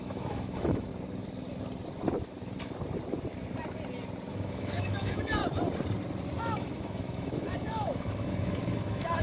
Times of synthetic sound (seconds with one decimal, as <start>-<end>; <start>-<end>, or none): 0.0-0.9; 4.3-5.4; 6.4-9.2